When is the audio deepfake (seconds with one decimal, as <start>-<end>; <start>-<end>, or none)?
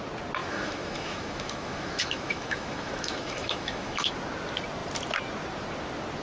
0.4-4.1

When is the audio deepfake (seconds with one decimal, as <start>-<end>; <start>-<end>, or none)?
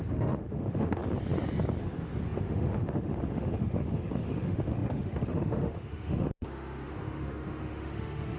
0.0-1.0; 1.8-8.4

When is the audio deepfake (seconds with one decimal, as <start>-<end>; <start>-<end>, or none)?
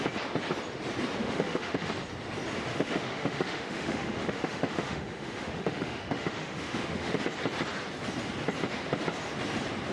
1.2-1.9; 2.7-7.2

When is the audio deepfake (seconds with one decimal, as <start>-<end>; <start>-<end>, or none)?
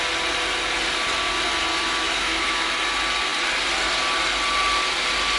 1.7-2.7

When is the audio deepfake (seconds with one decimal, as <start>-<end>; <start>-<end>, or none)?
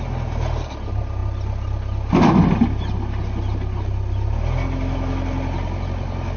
none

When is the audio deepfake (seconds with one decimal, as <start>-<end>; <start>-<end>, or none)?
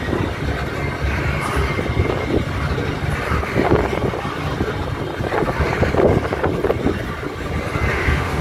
7.9-8.4